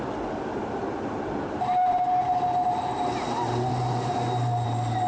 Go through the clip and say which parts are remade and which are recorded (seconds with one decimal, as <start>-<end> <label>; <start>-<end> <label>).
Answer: 0.0-5.1 recorded